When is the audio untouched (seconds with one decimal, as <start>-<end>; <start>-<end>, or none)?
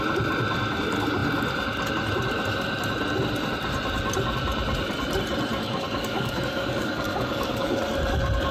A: 0.0-5.5; 7.8-8.5